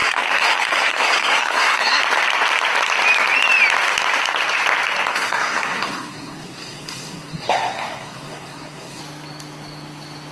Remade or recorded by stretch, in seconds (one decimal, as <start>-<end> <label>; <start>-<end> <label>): 0.0-2.0 remade; 2.0-5.1 recorded; 5.1-9.0 remade; 9.0-10.3 recorded